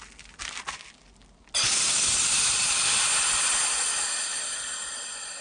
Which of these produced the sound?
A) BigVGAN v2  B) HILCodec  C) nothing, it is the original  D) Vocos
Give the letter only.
C